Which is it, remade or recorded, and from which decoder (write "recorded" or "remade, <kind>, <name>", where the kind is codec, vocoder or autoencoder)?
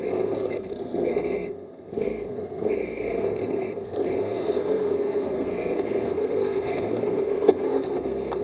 remade, codec, SNAC